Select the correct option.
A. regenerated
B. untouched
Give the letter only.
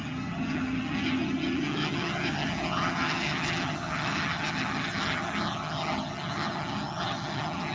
A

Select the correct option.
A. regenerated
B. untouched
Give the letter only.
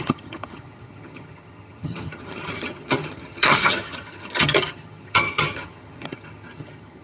A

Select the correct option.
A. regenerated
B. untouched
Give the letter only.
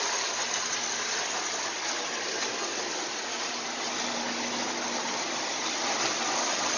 B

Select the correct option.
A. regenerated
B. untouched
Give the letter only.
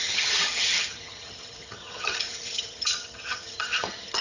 A